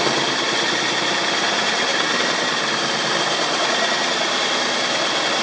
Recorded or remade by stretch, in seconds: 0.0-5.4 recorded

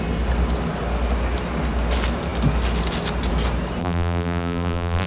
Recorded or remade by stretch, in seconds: 0.0-3.8 recorded; 3.8-5.1 remade

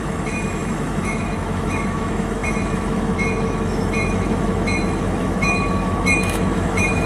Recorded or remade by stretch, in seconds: 0.0-7.1 remade